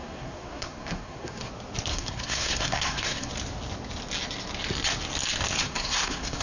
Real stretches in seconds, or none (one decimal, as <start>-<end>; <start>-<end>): 1.5-1.9; 3.3-5.6

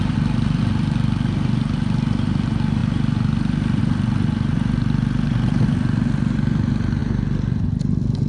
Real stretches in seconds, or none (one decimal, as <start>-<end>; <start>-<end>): 0.0-8.3

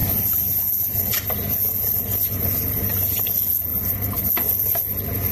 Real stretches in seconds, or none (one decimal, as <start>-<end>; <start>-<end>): 3.2-3.7; 4.3-5.3

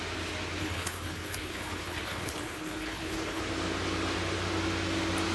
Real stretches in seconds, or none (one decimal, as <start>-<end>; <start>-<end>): 0.0-0.6; 3.4-5.3

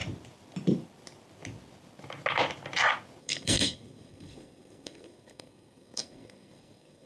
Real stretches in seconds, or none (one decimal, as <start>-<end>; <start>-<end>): 0.0-3.2

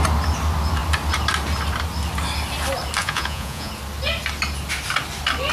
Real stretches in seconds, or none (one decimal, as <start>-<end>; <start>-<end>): 0.0-3.0; 3.7-5.5

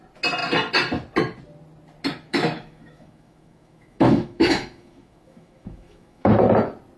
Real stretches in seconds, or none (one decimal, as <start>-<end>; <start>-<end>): 0.0-2.3; 6.3-7.0